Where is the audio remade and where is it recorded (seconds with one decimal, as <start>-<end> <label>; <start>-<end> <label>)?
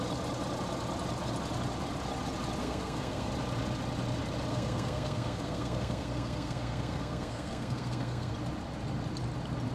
0.0-2.6 recorded; 2.6-3.3 remade; 3.3-4.5 recorded; 4.5-8.3 remade; 8.3-9.7 recorded